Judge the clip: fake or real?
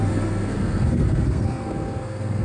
fake